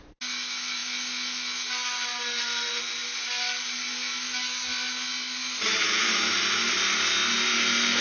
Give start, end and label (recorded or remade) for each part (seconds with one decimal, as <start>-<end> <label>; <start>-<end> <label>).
0.0-8.0 recorded